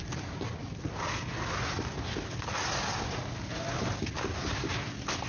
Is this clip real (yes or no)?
yes